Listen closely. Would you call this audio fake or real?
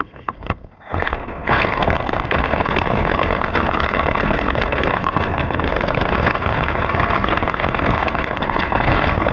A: fake